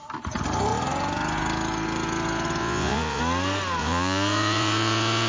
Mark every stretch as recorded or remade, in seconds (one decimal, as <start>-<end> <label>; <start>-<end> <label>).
0.0-2.6 recorded; 2.6-3.2 remade; 3.2-3.8 recorded; 3.8-5.3 remade